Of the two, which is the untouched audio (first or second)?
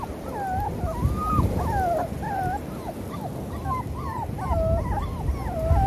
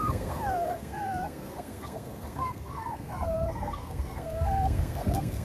first